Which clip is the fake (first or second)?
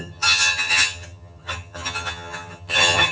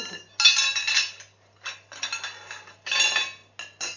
first